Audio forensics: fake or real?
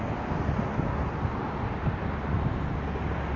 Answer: real